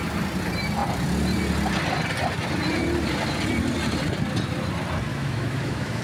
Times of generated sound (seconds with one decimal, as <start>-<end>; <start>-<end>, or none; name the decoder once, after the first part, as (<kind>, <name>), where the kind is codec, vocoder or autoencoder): 5.1-6.0 (autoencoder, DAC-VAE)